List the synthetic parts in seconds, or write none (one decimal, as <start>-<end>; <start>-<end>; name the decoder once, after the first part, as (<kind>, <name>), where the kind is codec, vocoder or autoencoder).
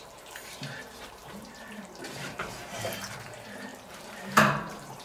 0.0-5.0 (vocoder, BigVGAN v2)